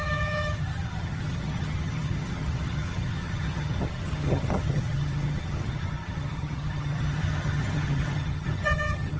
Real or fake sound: fake